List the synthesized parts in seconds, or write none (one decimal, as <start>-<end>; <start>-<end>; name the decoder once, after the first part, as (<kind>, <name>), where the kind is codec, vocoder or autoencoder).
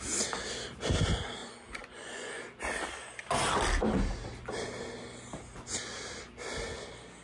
1.4-2.4 (vocoder, Vocos)